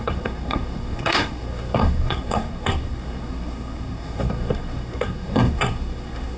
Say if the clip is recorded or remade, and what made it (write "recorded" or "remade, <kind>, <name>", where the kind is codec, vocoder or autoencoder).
remade, codec, SNAC